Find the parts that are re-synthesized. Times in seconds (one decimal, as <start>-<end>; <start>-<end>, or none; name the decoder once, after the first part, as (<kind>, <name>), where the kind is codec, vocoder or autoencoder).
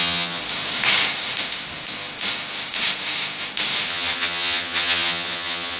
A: 0.0-0.4 (vocoder, HiFi-GAN); 3.9-5.8